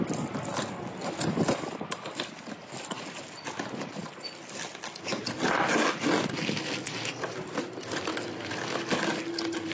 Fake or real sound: real